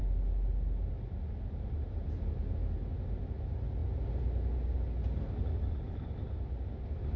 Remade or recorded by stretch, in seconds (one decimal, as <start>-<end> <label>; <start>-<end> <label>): 0.0-7.2 recorded